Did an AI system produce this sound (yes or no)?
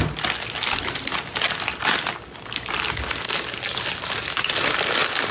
no